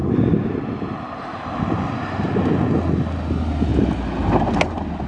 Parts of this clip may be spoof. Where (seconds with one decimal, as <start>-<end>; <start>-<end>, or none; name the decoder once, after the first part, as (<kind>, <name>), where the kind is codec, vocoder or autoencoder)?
none